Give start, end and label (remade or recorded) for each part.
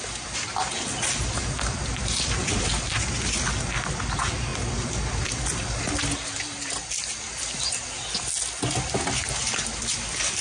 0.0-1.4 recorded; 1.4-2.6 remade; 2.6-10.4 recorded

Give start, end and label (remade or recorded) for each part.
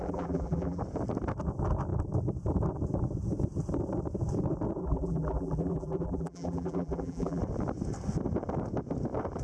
0.0-0.8 remade; 0.8-4.8 recorded; 4.8-7.4 remade; 7.4-9.4 recorded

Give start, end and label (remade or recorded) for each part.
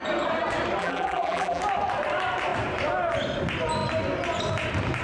0.0-0.8 recorded; 0.8-1.6 remade; 1.6-5.0 recorded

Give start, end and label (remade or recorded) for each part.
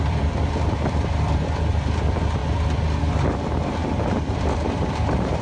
0.0-2.4 remade; 2.4-3.0 recorded; 3.0-5.4 remade